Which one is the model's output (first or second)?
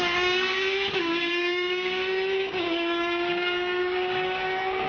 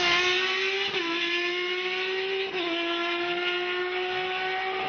first